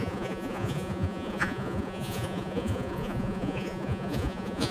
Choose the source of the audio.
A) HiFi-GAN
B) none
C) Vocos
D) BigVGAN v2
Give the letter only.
C